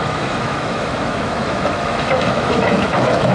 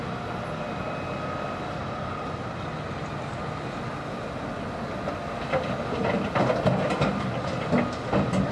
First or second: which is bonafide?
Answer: second